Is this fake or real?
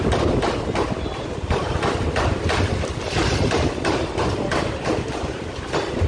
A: real